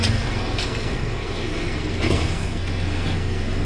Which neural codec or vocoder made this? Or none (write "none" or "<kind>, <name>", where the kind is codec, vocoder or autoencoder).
codec, SNAC